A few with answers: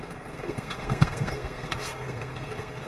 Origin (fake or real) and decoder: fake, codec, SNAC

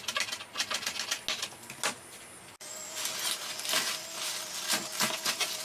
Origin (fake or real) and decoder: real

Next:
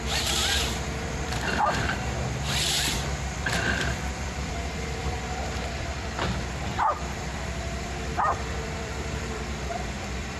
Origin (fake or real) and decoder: fake, vocoder, BigVGAN v2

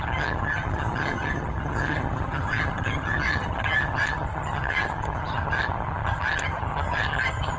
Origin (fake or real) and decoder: fake, vocoder, HiFi-GAN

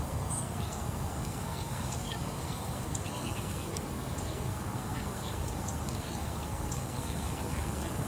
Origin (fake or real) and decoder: fake, codec, SNAC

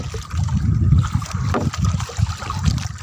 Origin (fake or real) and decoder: real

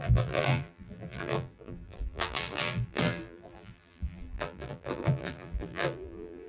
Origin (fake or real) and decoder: fake, vocoder, BigVGAN v2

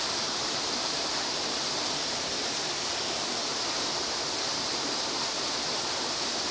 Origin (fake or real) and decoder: fake, vocoder, BigVGAN v2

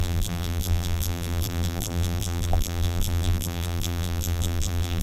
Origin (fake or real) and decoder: fake, vocoder, BigVGAN v2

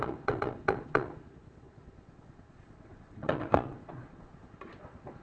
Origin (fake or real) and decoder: fake, vocoder, Vocos